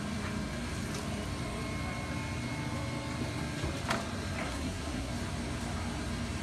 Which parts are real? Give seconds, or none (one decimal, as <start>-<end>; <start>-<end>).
0.0-4.4; 5.1-6.4